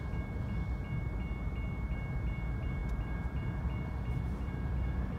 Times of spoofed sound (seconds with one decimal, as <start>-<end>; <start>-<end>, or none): none